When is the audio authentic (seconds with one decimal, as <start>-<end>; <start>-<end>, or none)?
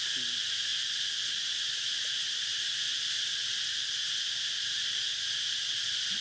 0.0-6.2